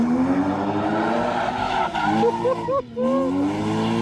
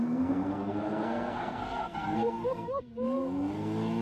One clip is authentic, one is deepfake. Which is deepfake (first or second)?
second